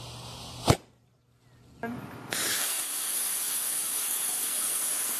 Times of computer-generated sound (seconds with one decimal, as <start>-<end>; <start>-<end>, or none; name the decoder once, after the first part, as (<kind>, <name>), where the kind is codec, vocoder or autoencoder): 2.5-5.2 (codec, SNAC)